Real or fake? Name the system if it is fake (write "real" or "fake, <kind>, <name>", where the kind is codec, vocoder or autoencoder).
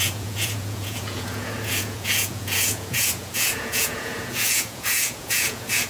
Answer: fake, vocoder, Vocos